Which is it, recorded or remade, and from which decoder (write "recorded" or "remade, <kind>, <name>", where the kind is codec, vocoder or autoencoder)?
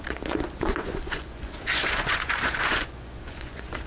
remade, vocoder, Vocos